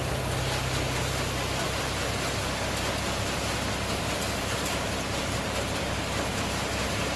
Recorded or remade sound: recorded